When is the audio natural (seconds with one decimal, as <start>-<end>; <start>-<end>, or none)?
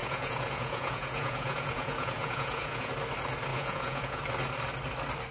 2.9-3.5; 4.2-5.3